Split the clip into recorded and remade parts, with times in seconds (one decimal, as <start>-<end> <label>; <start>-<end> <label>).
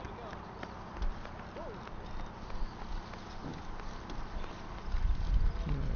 0.0-6.0 recorded